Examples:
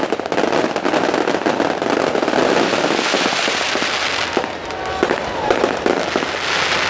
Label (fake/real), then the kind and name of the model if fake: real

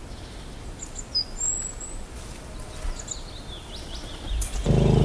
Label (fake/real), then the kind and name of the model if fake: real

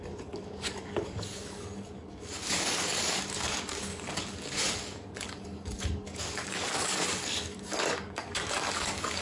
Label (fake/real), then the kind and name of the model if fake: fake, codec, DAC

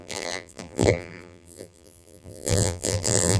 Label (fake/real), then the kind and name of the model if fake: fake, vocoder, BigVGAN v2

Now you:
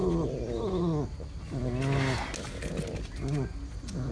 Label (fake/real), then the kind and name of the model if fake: real